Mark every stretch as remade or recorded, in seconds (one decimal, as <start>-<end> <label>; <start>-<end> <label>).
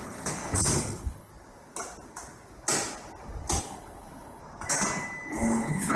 0.0-1.3 remade; 1.3-3.6 recorded; 3.6-4.4 remade; 4.4-5.3 recorded; 5.3-6.0 remade